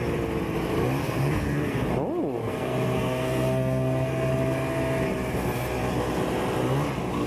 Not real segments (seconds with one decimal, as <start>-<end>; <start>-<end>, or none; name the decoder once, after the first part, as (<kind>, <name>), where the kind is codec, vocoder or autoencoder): 1.0-1.9 (codec, SNAC); 2.4-4.3